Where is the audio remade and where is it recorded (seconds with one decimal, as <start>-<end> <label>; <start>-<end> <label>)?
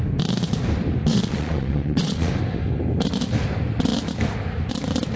0.0-1.1 recorded; 1.1-2.3 remade; 2.3-5.2 recorded